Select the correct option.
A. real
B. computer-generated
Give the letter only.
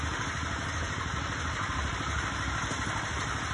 B